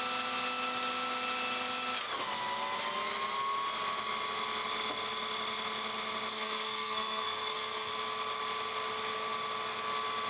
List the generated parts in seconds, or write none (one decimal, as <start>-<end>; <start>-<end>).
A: 6.3-7.9